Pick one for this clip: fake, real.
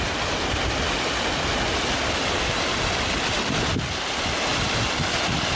real